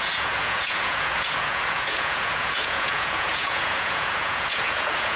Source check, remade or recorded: remade